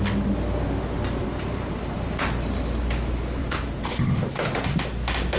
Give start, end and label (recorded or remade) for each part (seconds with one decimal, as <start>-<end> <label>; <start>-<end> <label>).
0.0-1.2 recorded; 1.2-2.2 remade; 2.2-3.4 recorded; 3.4-4.8 remade; 4.8-5.4 recorded